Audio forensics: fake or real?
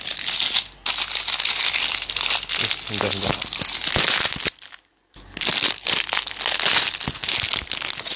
real